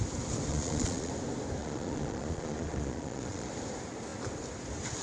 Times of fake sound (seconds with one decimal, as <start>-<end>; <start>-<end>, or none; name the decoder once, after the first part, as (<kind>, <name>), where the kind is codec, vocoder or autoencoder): 0.5-1.1 (vocoder, Vocos); 1.6-3.5